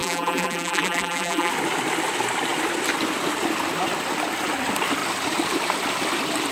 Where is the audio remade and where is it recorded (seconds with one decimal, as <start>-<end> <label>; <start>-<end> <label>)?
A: 0.0-1.5 remade; 1.5-6.5 recorded

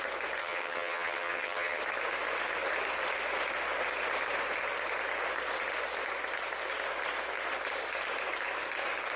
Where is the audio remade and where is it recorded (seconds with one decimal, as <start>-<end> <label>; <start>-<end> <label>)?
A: 0.0-0.4 recorded; 0.4-1.8 remade; 1.8-9.2 recorded

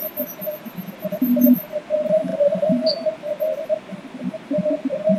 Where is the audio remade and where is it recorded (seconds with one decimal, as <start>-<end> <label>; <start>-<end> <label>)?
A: 0.0-5.2 recorded